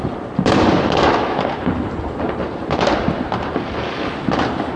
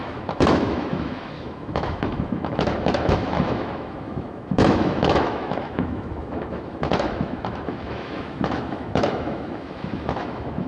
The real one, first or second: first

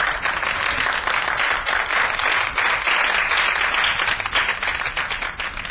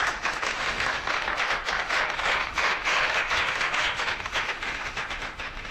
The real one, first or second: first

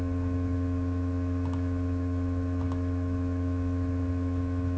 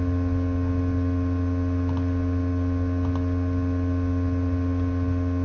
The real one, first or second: second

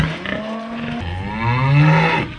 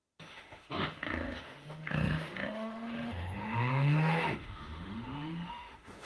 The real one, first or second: first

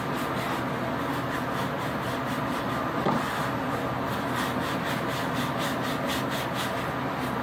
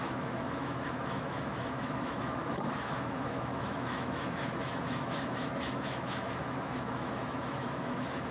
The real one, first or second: first